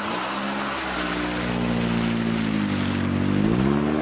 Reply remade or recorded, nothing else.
recorded